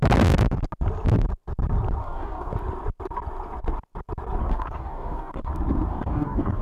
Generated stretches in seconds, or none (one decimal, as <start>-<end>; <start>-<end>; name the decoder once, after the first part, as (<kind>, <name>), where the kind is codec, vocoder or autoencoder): 2.0-2.5 (codec, DAC); 4.4-5.5; 5.9-6.6